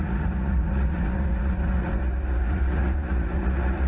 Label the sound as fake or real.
fake